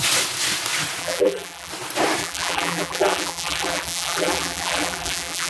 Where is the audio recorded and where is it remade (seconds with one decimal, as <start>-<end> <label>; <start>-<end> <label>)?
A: 0.0-1.0 recorded; 1.0-1.7 remade; 1.7-2.2 recorded; 2.2-5.5 remade